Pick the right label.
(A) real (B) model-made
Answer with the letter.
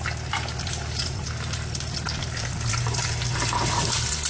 A